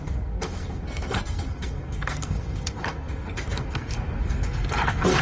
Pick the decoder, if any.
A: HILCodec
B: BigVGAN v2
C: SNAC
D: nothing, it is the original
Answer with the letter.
C